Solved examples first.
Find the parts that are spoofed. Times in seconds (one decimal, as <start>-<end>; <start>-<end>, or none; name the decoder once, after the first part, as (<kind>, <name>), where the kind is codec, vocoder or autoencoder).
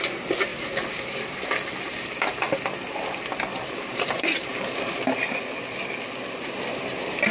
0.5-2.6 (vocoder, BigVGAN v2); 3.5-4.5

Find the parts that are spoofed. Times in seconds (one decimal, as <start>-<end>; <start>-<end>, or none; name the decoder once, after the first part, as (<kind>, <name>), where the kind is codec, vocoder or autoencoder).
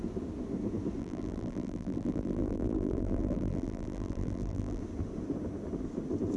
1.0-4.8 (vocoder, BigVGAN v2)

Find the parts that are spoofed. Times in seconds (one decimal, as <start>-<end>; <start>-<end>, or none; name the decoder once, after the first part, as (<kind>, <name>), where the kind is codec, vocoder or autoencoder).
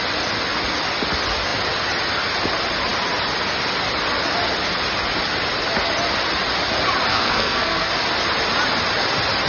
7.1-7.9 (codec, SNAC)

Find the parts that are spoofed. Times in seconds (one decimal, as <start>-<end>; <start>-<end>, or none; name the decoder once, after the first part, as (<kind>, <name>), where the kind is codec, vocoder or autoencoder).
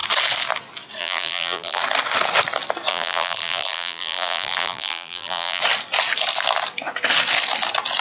1.0-1.8 (vocoder, BigVGAN v2); 2.9-5.6